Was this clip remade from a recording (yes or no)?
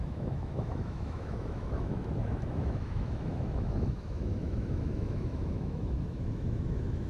yes